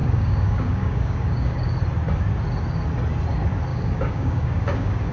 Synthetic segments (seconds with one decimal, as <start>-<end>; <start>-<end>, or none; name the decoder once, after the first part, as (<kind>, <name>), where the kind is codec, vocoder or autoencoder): 0.0-1.7 (codec, DAC); 3.7-5.1